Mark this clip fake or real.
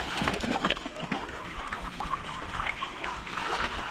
fake